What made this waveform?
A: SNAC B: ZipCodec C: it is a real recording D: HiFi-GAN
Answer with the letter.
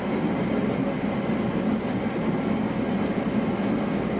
C